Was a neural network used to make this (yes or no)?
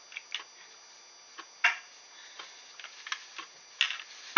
no